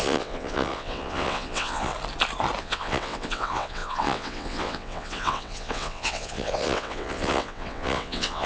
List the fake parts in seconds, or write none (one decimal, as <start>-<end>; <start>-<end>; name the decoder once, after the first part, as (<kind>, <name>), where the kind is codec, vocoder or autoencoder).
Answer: 0.0-1.9 (vocoder, WaveNeXt); 2.6-8.5